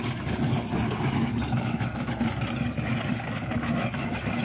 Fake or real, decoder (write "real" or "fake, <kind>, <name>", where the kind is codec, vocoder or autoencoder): fake, codec, DAC